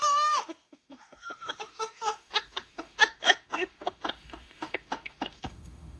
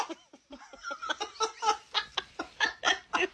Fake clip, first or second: first